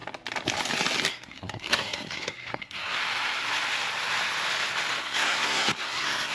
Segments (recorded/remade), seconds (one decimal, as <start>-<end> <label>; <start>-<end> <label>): 0.0-1.1 recorded; 1.1-3.0 remade; 3.0-5.0 recorded; 5.0-6.3 remade